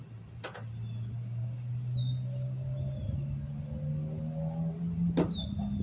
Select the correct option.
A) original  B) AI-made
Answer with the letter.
A